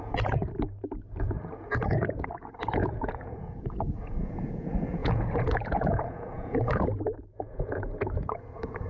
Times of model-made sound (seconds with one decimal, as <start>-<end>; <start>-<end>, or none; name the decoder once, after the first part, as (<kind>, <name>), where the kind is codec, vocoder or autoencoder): 0.0-8.9 (vocoder, Vocos)